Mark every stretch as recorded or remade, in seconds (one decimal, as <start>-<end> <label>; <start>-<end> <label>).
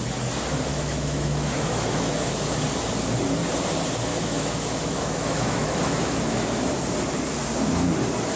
0.0-0.7 recorded; 0.7-2.3 remade; 2.3-4.1 recorded; 4.1-6.6 remade; 6.6-8.4 recorded